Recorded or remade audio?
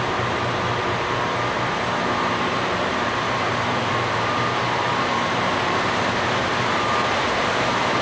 remade